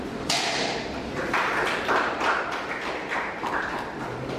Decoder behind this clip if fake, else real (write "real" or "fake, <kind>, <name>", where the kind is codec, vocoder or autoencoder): real